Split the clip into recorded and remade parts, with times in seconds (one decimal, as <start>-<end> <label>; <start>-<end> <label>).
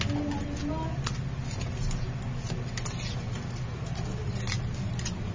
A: 0.0-5.3 recorded